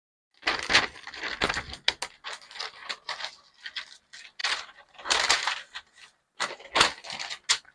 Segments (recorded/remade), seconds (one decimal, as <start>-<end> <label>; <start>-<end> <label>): 0.0-2.8 recorded; 2.8-3.4 remade; 3.4-4.4 recorded; 4.4-6.7 remade; 6.7-7.7 recorded